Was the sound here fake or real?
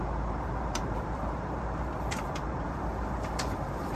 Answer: fake